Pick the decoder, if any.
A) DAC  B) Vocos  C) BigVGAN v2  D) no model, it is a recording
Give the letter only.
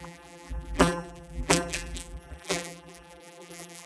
C